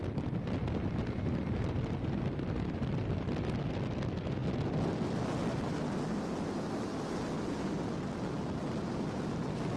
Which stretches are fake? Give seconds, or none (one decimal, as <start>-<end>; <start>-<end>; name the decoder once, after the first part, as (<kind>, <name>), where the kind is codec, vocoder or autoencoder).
none

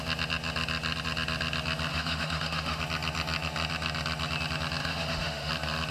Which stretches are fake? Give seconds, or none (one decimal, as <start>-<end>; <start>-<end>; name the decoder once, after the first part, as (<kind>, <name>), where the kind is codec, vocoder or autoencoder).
1.9-2.8 (autoencoder, DAC-VAE); 4.8-5.5